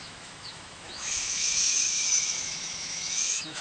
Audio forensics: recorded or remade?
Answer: remade